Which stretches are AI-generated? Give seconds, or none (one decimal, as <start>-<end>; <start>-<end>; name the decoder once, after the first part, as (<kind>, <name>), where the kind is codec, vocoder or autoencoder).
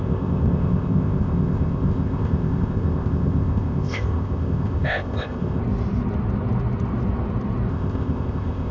0.0-5.6 (codec, ZipCodec); 7.7-8.7